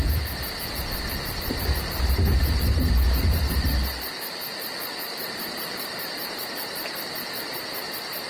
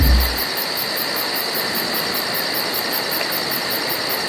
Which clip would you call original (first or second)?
second